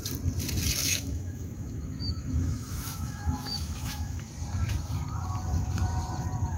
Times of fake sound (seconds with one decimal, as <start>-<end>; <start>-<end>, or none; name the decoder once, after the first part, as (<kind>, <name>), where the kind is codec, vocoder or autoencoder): 0.8-4.3 (autoencoder, DAC-VAE)